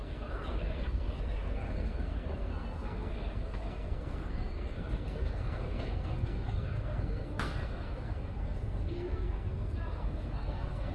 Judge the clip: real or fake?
fake